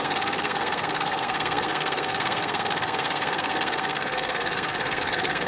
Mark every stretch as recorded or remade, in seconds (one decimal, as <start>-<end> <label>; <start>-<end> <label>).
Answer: 0.0-5.5 remade